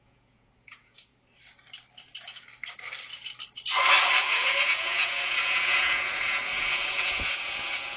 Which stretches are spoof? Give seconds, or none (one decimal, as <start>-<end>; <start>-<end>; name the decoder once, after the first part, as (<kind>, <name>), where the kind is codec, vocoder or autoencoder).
0.0-1.1 (vocoder, Vocos); 4.2-8.0